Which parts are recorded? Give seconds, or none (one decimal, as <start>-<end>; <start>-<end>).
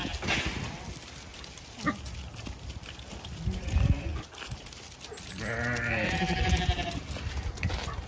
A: 0.0-8.1